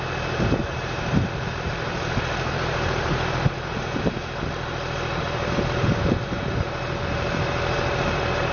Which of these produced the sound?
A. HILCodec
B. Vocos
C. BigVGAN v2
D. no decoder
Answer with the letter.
C